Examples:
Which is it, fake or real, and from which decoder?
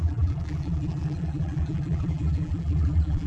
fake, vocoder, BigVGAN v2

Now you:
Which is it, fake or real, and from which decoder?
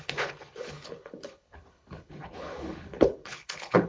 fake, codec, HILCodec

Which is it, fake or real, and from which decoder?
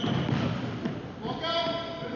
real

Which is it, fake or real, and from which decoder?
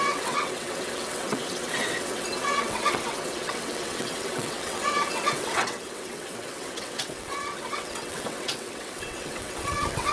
fake, vocoder, WaveNeXt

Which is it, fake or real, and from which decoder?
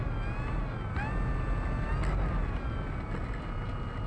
real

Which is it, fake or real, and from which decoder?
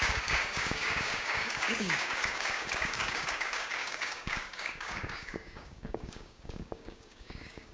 fake, codec, DAC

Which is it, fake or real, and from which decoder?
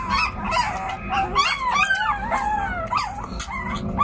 real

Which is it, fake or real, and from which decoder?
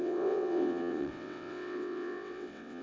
fake, vocoder, WaveNeXt